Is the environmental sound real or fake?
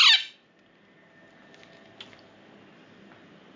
real